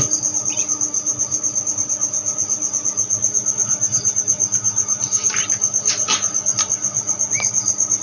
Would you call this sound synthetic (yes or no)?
no